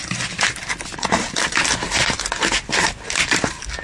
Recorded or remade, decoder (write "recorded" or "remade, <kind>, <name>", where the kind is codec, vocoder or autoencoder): recorded